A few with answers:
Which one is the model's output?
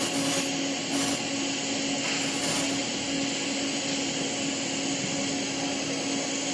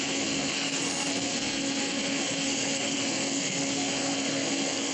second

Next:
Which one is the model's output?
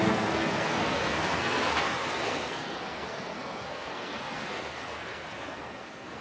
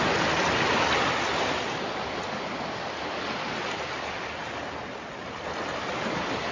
first